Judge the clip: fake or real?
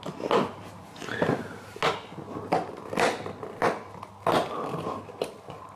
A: real